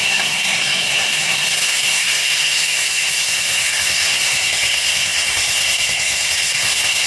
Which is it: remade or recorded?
remade